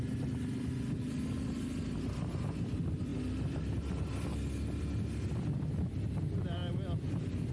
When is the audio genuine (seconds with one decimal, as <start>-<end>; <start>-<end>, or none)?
0.0-7.5